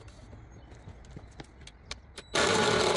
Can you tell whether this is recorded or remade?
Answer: recorded